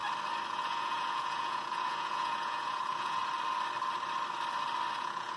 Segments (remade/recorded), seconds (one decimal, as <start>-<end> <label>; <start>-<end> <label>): 0.0-0.5 recorded; 0.5-3.2 remade; 3.2-5.0 recorded; 5.0-5.4 remade

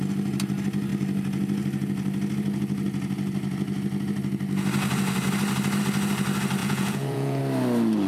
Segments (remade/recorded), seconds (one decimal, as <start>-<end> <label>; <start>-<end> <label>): 0.0-6.6 recorded; 6.6-7.4 remade; 7.4-8.1 recorded

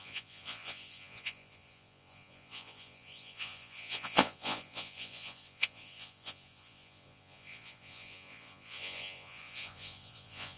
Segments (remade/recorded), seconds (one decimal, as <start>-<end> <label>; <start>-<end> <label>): 0.0-10.6 remade